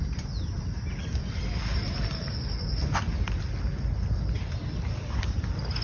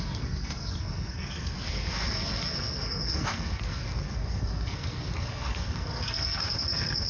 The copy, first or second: second